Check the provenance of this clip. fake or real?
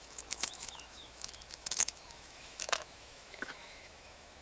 fake